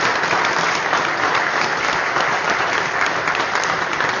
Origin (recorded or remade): recorded